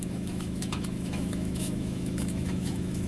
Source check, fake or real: fake